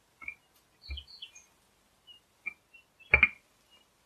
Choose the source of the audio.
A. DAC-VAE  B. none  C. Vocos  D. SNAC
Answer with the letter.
B